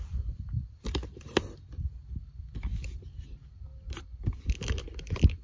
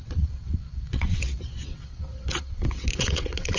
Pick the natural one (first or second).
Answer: first